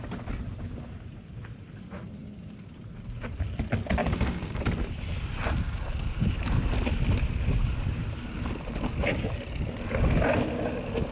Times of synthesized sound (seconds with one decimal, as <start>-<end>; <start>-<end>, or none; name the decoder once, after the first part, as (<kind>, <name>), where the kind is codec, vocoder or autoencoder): 4.0-4.6 (codec, DAC)